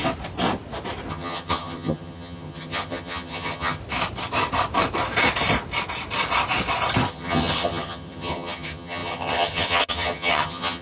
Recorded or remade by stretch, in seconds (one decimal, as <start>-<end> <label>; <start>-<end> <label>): 0.0-1.1 recorded; 1.1-3.8 remade; 3.8-7.1 recorded; 7.1-10.8 remade